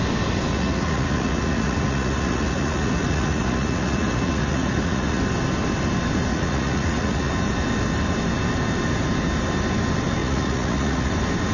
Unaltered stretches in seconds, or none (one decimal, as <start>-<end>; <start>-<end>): 0.0-0.5; 5.2-6.3; 7.3-10.2; 11.1-11.5